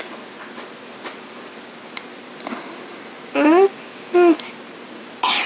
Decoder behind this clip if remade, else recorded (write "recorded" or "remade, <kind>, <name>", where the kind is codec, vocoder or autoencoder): recorded